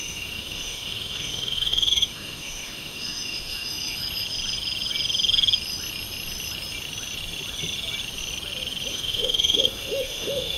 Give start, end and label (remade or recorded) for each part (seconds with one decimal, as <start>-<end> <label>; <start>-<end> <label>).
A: 0.0-4.0 remade; 4.0-8.9 recorded; 8.9-10.6 remade